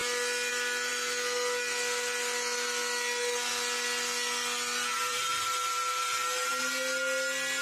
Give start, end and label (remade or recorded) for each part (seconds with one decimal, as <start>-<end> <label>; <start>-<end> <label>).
0.0-4.9 recorded; 4.9-6.6 remade; 6.6-7.6 recorded